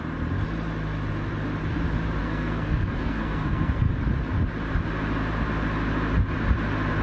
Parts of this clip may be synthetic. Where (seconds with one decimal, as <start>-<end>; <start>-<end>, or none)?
2.2-3.9